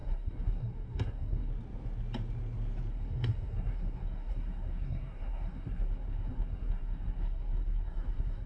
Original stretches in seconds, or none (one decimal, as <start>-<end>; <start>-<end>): 1.5-2.9